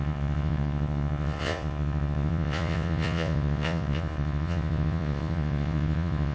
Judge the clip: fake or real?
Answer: fake